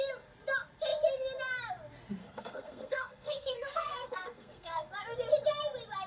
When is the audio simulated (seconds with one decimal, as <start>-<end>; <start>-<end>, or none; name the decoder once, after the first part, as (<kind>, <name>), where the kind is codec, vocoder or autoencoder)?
2.2-4.9 (codec, SNAC)